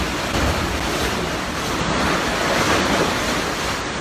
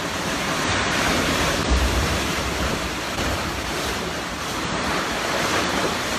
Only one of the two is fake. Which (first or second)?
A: second